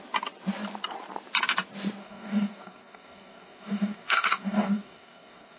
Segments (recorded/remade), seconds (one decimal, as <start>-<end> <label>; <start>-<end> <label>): 0.0-2.0 recorded; 2.0-5.6 remade